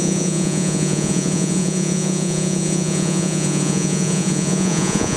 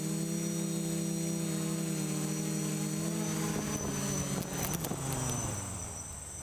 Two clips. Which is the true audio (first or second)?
second